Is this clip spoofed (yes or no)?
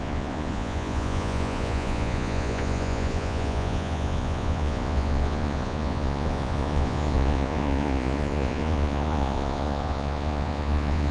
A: yes